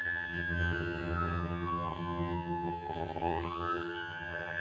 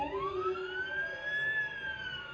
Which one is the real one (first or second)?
second